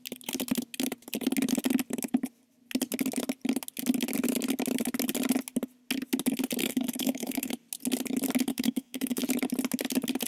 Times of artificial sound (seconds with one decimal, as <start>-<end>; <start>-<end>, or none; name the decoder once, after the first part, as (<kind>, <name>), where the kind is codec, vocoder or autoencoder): 6.6-7.5 (codec, SNAC); 8.5-9.2